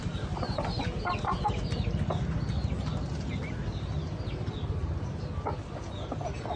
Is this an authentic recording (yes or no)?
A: yes